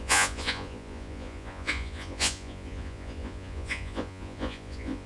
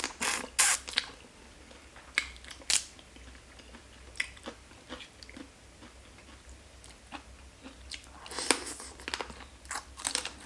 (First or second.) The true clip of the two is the second